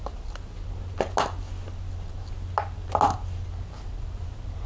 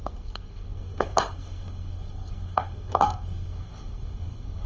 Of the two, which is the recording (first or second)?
first